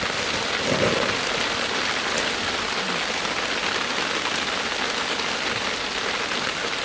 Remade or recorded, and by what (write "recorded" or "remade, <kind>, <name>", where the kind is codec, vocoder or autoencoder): recorded